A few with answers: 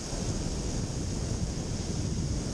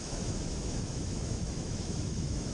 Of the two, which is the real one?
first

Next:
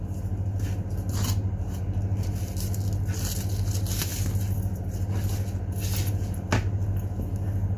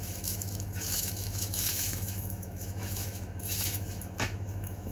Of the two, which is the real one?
first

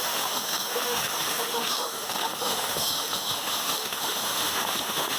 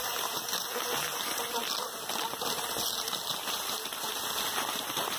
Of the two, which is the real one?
second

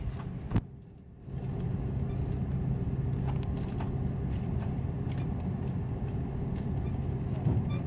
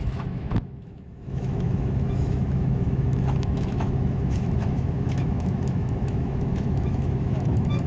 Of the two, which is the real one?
first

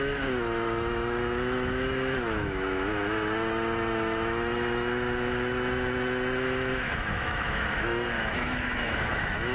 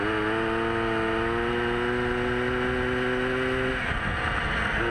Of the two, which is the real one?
second